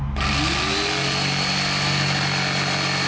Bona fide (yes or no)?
yes